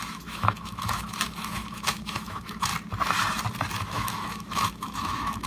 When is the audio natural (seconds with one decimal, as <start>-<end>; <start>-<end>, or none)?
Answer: 2.7-3.8